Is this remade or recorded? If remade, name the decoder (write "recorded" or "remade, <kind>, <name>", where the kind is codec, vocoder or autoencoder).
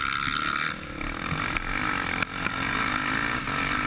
recorded